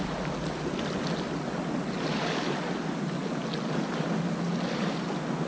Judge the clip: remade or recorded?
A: recorded